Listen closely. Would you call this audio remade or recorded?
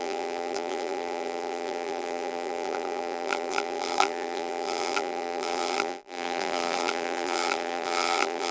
remade